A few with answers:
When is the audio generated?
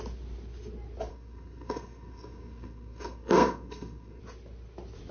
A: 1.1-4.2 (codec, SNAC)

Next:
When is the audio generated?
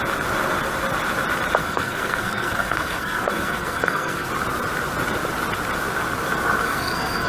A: 1.6-4.3 (codec, SNAC); 6.6-7.3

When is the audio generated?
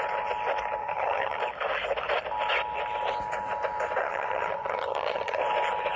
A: 0.8-1.4 (vocoder, HiFi-GAN); 4.0-5.4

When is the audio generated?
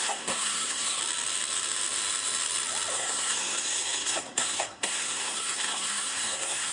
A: 0.0-1.0 (codec, SNAC); 2.9-6.7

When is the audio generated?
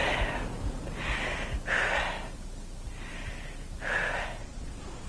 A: 4.4-5.1 (vocoder, Vocos)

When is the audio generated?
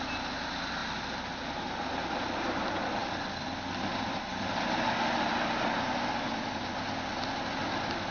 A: none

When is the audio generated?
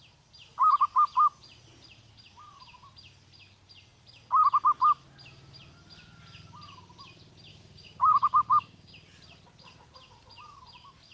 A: 7.5-8.9 (codec, DAC)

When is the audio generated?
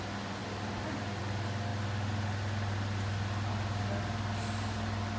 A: none